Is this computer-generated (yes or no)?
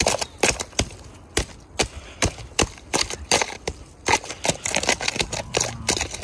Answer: no